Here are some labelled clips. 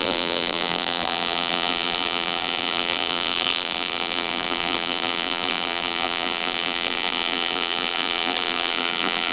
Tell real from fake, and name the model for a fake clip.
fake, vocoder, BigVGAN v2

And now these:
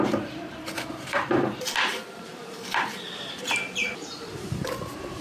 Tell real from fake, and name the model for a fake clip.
fake, vocoder, BigVGAN v2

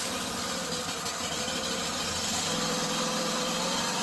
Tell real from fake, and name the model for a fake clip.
fake, vocoder, BigVGAN v2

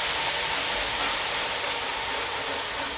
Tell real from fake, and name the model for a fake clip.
real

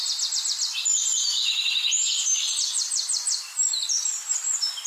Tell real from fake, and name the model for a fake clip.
fake, vocoder, BigVGAN v2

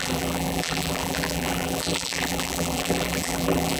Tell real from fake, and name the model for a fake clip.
fake, vocoder, BigVGAN v2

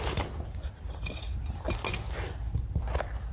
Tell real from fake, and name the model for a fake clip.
real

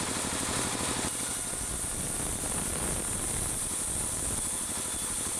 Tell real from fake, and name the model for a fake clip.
fake, vocoder, BigVGAN v2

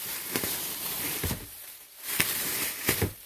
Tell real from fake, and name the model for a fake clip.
fake, vocoder, BigVGAN v2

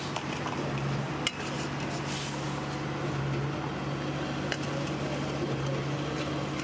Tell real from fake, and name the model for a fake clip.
real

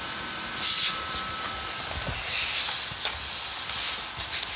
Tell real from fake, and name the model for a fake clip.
real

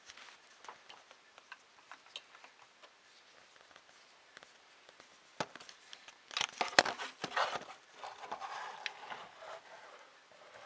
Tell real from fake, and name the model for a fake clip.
real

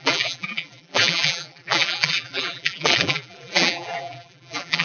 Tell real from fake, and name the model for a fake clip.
fake, vocoder, BigVGAN v2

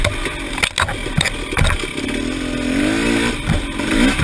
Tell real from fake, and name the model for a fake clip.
real